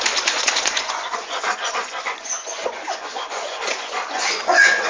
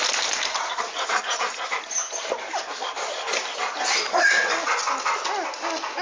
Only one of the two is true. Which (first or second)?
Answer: second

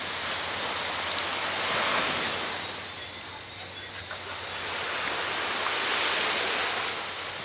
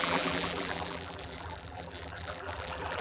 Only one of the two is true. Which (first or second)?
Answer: first